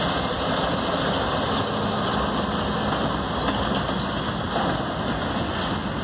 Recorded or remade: recorded